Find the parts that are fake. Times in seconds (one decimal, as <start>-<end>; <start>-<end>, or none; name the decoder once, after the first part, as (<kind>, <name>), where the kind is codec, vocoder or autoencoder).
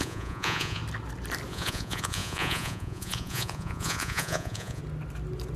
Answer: 0.0-0.8 (vocoder, Vocos); 1.5-4.8